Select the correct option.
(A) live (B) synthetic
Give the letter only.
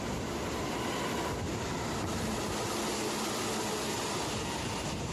A